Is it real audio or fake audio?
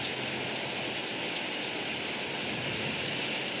real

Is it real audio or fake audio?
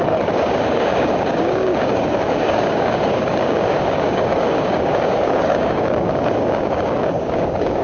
fake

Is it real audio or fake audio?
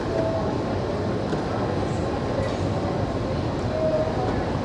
real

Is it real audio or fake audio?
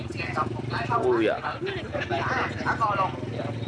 real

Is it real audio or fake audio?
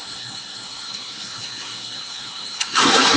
fake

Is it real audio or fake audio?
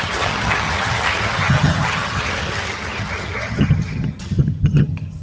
fake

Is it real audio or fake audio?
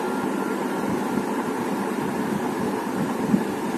real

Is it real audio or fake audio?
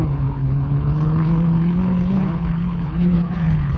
fake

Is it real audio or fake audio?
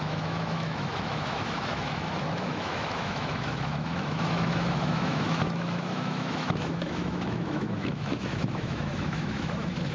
fake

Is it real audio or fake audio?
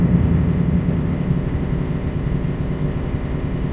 fake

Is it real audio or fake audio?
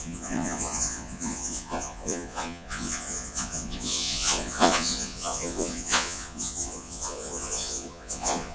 fake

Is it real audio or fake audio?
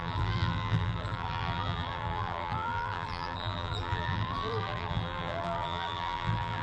fake